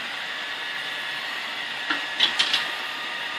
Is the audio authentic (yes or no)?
yes